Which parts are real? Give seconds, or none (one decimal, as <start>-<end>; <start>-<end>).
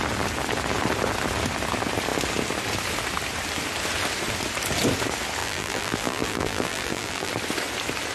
0.0-5.4; 7.3-8.1